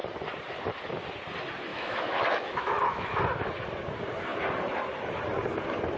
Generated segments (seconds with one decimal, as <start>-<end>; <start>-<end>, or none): 1.7-3.2